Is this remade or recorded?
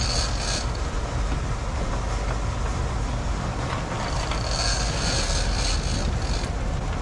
recorded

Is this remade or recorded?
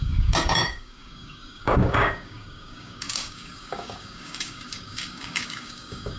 remade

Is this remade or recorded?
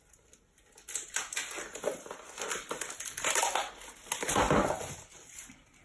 recorded